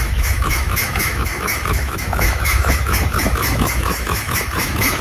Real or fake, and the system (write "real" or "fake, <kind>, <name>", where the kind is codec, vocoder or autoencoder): fake, autoencoder, DAC-VAE